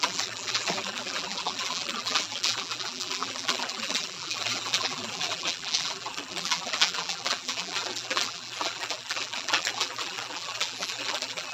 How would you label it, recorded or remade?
remade